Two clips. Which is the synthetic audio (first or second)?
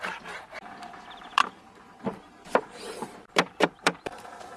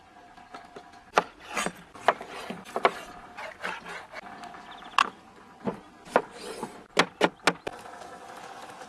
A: first